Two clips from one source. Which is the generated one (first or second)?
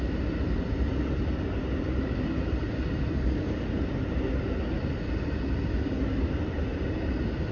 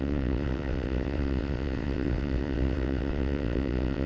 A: second